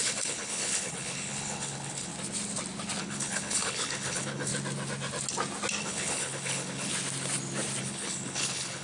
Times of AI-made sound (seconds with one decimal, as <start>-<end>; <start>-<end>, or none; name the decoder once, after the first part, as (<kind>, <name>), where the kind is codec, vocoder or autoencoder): 0.0-2.1 (codec, HILCodec); 3.0-4.5; 5.8-6.9; 7.8-8.8